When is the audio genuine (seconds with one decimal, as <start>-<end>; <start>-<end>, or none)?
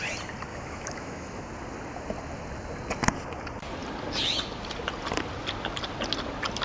0.0-0.5; 1.4-6.6